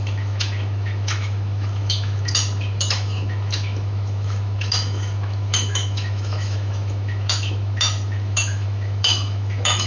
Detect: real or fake fake